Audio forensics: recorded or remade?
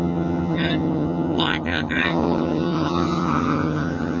remade